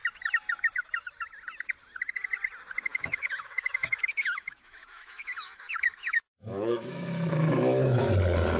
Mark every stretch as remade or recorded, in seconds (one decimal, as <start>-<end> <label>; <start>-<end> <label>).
0.0-2.9 recorded; 2.9-8.1 remade; 8.1-8.6 recorded